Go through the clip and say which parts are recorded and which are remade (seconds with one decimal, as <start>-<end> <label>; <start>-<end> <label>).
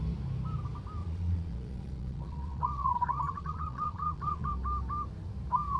0.0-1.0 recorded; 1.0-4.5 remade; 4.5-5.8 recorded